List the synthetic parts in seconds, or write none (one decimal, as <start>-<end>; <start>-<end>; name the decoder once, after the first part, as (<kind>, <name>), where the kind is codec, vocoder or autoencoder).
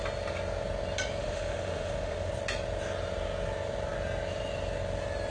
1.2-2.3 (autoencoder, DAC-VAE)